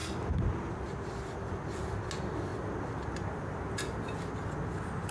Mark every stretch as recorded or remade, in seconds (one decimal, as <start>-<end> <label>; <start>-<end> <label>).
0.0-5.1 recorded

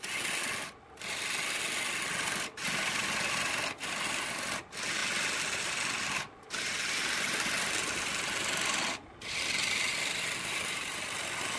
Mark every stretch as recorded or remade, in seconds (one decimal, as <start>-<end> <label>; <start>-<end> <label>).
0.0-11.6 recorded

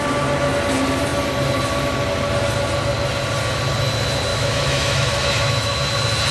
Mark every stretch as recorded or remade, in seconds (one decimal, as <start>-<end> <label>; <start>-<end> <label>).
0.0-4.3 recorded; 4.3-5.8 remade; 5.8-6.3 recorded

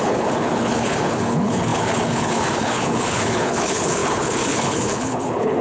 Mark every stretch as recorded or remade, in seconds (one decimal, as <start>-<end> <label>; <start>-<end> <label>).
0.0-5.6 remade

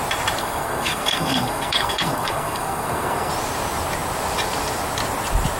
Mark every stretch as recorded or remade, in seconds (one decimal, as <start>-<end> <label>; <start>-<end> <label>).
0.0-0.4 recorded; 0.4-3.3 remade; 3.3-5.6 recorded

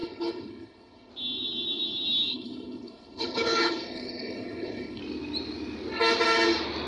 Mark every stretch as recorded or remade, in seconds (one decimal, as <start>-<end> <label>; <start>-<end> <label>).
0.0-1.1 remade; 1.1-2.3 recorded; 2.3-5.0 remade; 5.0-6.9 recorded

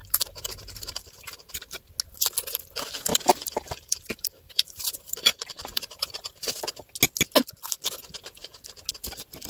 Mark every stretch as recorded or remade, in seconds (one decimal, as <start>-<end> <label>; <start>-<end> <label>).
0.0-1.5 remade; 1.5-3.1 recorded; 3.1-6.5 remade; 6.5-9.5 recorded

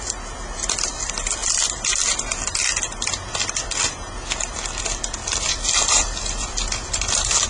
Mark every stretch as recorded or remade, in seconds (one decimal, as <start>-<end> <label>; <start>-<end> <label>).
0.0-1.4 remade; 1.4-4.8 recorded; 4.8-7.5 remade